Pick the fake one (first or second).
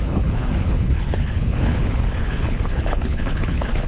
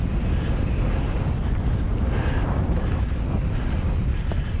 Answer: first